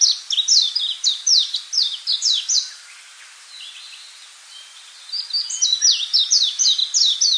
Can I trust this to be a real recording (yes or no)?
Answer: yes